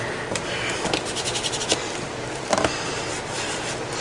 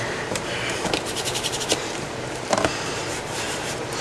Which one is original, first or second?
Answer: first